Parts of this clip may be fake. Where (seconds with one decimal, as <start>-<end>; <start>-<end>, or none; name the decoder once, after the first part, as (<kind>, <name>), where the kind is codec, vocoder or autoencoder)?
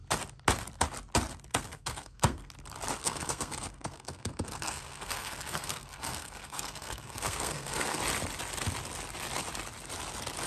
1.5-2.5 (codec, SNAC); 3.0-8.0